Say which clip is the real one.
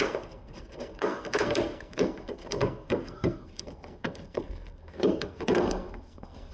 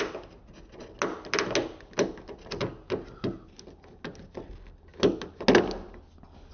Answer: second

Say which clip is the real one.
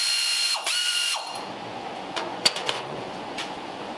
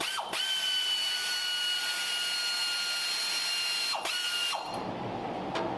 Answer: second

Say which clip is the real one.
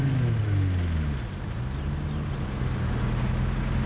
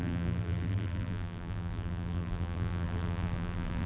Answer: first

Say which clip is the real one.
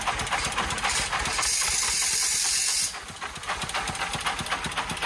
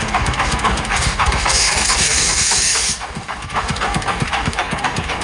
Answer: first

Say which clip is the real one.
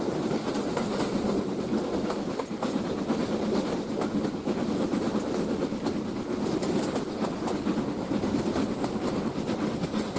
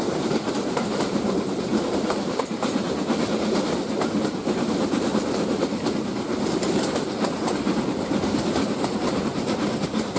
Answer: first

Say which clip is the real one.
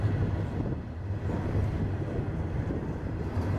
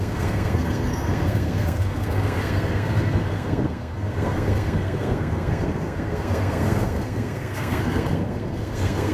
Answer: first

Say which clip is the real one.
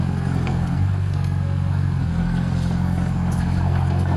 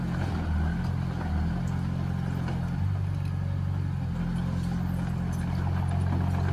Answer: second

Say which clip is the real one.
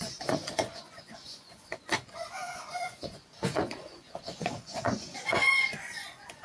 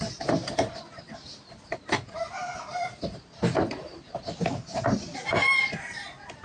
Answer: second